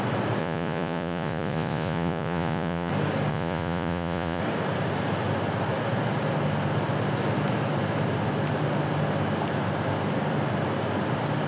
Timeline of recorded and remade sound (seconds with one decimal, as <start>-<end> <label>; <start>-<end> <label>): 0.0-0.4 recorded; 0.4-2.9 remade; 2.9-3.3 recorded; 3.3-4.4 remade; 4.4-11.5 recorded